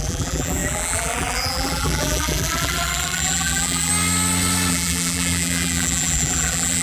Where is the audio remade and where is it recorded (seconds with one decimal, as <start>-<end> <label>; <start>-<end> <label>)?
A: 0.0-3.9 remade; 3.9-4.7 recorded; 4.7-6.8 remade